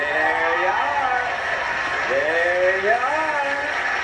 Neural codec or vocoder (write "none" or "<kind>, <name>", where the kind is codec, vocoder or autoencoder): none